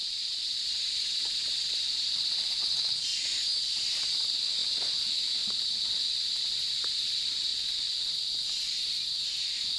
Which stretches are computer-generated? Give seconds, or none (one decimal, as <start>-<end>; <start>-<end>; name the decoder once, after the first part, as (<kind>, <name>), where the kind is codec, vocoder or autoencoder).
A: 0.0-3.1 (vocoder, BigVGAN v2); 3.6-4.6; 5.8-9.8